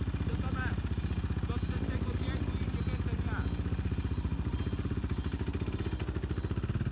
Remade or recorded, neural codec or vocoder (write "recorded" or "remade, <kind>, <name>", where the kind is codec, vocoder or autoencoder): recorded